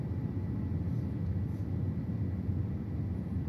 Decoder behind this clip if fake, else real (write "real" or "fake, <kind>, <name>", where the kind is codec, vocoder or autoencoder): real